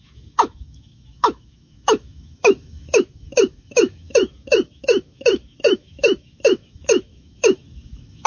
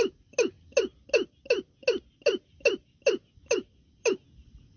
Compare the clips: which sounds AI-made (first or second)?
first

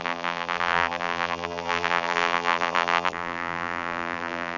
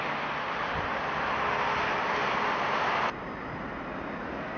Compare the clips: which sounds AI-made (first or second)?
first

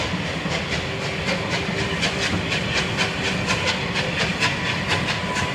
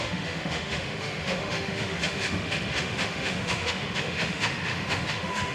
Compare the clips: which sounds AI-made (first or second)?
second